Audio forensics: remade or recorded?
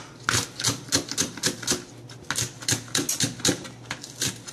recorded